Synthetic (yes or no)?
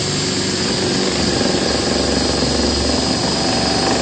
no